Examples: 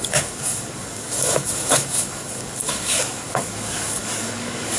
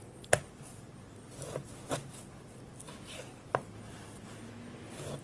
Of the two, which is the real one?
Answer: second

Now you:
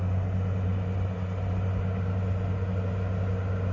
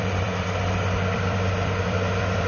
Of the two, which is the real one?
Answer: first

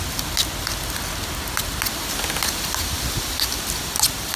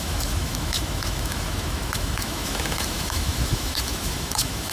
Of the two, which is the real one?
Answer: first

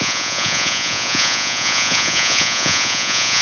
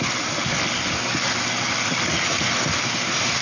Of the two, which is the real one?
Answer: second